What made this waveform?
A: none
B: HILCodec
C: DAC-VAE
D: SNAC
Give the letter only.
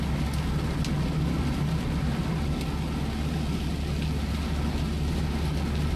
A